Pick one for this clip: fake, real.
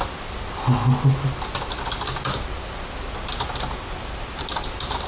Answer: real